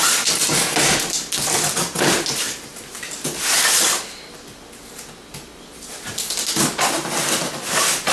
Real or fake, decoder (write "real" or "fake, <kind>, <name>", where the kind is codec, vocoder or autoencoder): real